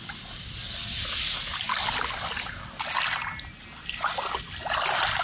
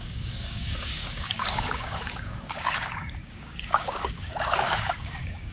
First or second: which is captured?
first